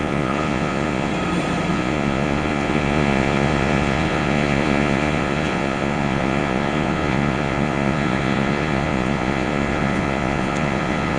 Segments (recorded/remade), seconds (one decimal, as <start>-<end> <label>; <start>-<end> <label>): 0.0-1.1 remade; 1.1-1.7 recorded; 1.7-11.2 remade